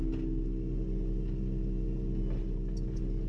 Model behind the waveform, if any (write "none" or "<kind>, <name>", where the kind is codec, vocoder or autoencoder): none